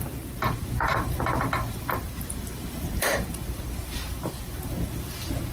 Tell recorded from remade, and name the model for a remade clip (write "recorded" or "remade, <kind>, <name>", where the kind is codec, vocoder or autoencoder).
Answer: remade, vocoder, BigVGAN v2